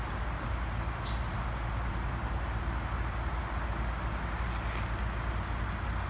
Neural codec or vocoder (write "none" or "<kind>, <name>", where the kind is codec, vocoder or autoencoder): none